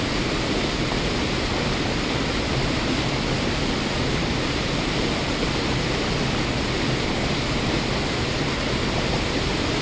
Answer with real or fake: real